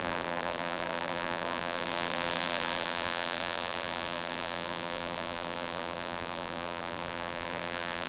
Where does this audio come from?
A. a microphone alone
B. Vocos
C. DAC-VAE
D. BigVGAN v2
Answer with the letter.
D